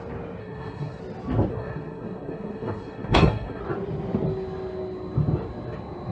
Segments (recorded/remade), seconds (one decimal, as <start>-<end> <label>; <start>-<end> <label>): 0.0-0.4 recorded; 0.4-1.0 remade; 1.0-1.5 recorded; 1.5-3.6 remade; 3.6-6.1 recorded